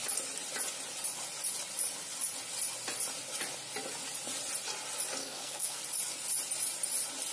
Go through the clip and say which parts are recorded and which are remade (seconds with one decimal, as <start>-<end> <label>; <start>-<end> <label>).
0.0-5.2 recorded; 5.2-5.8 remade; 5.8-7.3 recorded